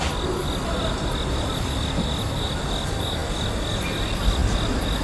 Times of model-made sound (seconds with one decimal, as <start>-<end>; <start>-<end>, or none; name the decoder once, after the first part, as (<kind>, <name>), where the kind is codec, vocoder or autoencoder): none